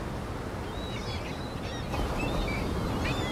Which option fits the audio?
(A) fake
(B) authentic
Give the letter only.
B